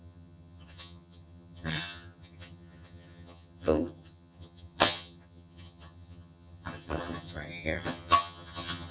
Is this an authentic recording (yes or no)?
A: no